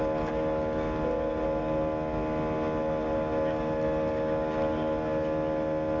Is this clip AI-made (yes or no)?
no